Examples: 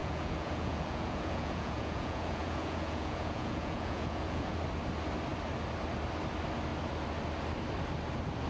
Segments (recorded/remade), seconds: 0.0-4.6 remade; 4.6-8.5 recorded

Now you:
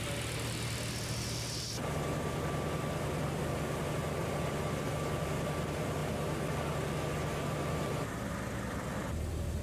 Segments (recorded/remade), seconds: 0.0-9.6 recorded

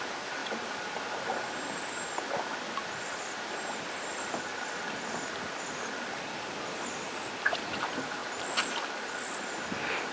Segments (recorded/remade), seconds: 0.0-10.1 recorded

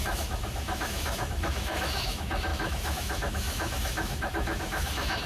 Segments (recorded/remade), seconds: 0.0-5.3 remade

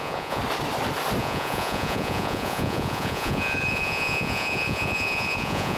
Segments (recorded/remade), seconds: 0.0-0.4 remade; 0.4-1.2 recorded; 1.2-5.8 remade

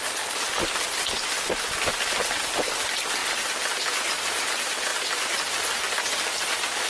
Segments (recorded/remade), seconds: 0.0-6.9 recorded

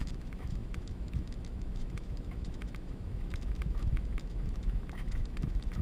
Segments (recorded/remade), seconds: 0.0-5.8 remade